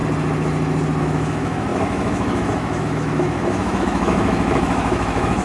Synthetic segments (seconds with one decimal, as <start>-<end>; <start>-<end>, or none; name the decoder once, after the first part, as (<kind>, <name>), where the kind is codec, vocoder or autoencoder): 1.0-5.4 (autoencoder, DAC-VAE)